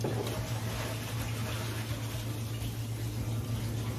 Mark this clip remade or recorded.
recorded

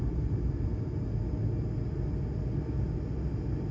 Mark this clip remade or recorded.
recorded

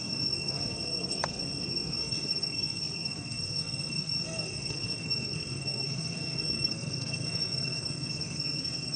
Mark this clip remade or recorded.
remade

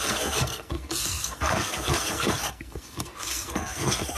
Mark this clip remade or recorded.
remade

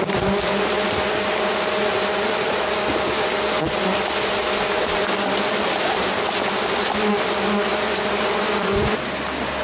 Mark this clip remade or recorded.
recorded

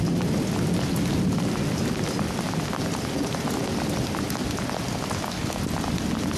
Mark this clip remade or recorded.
recorded